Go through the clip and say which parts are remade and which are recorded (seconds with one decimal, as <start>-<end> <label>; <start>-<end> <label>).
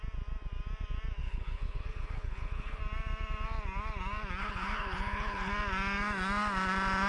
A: 0.0-1.2 recorded; 1.2-2.8 remade; 2.8-4.4 recorded; 4.4-5.5 remade; 5.5-7.1 recorded